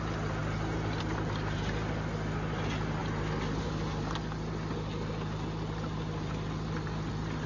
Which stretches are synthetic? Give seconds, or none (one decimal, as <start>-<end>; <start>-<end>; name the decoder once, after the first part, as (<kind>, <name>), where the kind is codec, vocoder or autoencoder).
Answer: none